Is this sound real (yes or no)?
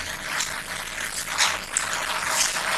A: yes